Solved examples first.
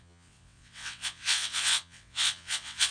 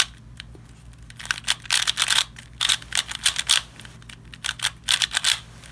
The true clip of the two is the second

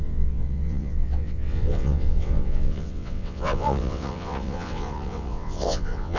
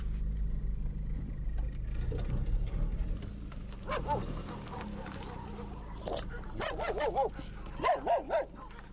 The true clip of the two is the second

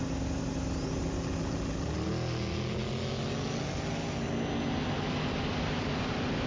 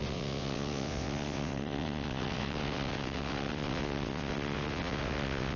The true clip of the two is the first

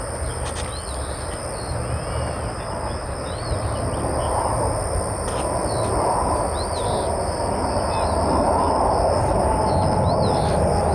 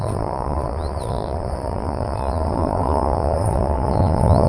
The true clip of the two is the first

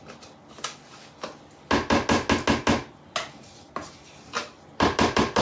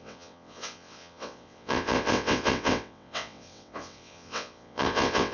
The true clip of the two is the first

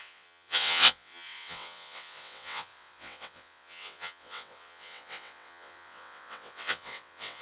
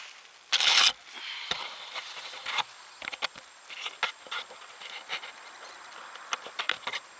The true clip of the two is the second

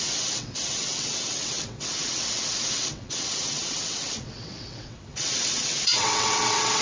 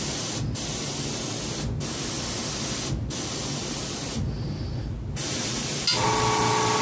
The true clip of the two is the second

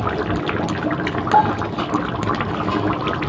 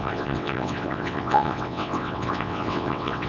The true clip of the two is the first